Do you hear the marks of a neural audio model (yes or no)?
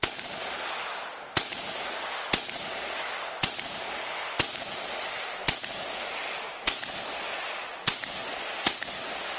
no